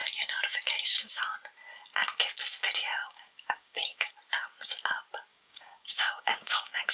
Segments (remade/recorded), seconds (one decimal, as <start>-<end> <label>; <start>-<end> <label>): 0.0-1.2 remade; 1.2-3.0 recorded; 3.0-4.1 remade; 4.1-5.3 recorded; 5.3-6.9 remade